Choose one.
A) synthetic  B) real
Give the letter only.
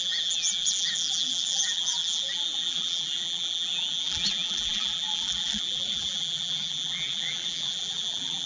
A